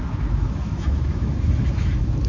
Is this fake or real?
fake